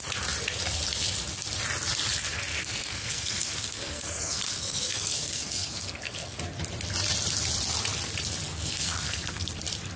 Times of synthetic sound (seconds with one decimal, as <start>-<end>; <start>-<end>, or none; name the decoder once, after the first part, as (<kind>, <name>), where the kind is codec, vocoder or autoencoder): 2.5-6.4 (codec, SNAC); 8.5-9.6